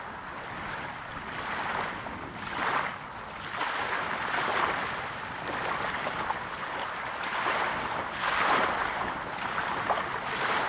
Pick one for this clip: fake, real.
real